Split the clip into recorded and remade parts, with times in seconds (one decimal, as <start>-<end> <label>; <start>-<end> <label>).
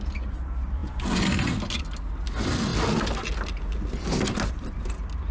0.0-5.3 recorded